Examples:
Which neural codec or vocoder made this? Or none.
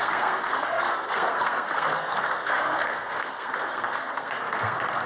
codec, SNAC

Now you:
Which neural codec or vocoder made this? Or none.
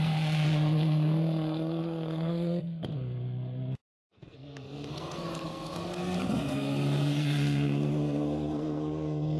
codec, SNAC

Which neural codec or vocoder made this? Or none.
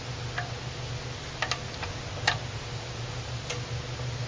none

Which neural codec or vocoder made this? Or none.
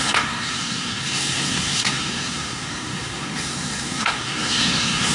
codec, SNAC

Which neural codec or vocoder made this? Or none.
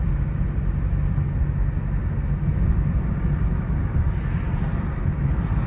none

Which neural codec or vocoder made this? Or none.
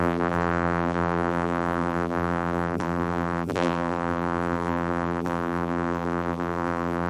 vocoder, BigVGAN v2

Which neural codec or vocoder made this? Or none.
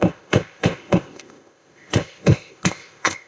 codec, ZipCodec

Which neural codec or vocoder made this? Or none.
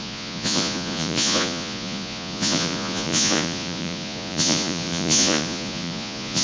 vocoder, Vocos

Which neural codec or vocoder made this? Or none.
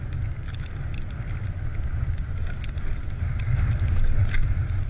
none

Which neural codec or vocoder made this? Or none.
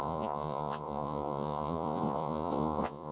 vocoder, Vocos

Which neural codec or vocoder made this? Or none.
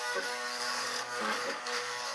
codec, DAC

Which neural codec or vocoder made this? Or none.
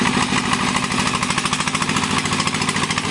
none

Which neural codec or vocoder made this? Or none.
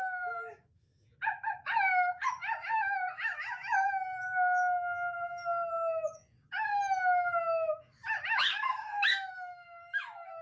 autoencoder, DAC-VAE